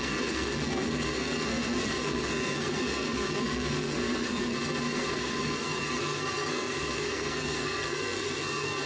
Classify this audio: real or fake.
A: fake